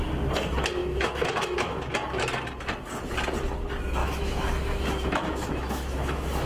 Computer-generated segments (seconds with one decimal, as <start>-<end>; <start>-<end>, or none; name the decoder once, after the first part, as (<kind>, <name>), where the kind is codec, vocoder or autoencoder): 0.8-1.8 (autoencoder, DAC-VAE); 4.0-6.5